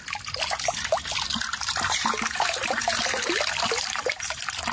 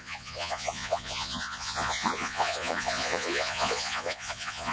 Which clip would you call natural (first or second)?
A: first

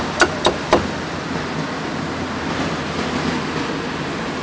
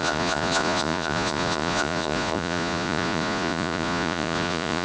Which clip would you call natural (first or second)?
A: first